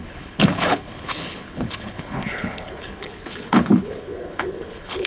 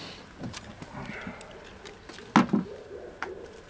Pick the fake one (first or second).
first